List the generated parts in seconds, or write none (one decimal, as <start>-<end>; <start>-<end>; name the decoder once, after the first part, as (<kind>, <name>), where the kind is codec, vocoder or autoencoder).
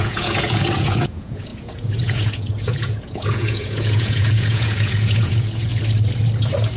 0.0-5.7 (vocoder, Vocos)